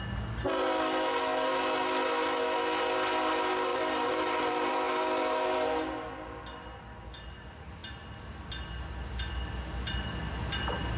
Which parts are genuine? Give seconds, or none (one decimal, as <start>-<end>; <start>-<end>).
0.0-3.7; 4.7-11.0